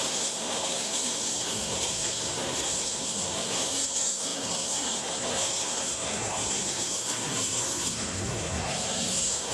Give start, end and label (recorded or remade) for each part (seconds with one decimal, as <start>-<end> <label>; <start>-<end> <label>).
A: 0.0-9.5 remade